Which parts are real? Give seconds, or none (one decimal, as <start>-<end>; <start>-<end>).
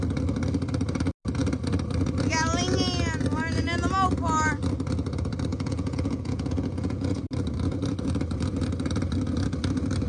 0.0-5.5; 7.2-10.1